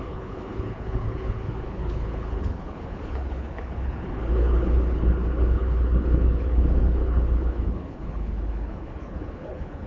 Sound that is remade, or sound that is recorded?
remade